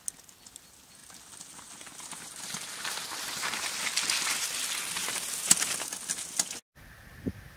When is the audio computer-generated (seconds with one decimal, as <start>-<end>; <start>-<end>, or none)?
none